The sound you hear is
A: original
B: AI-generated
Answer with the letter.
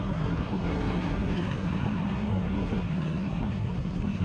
B